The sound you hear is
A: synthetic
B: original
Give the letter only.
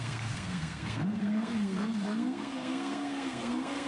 A